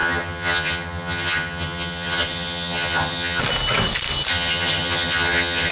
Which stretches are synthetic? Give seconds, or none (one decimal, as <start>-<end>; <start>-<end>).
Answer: 0.0-3.4; 4.3-5.7